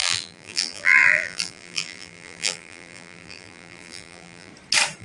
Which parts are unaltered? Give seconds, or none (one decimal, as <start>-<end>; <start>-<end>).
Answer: 4.5-5.0